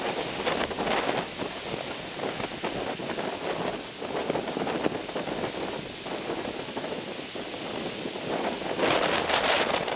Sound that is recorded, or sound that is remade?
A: recorded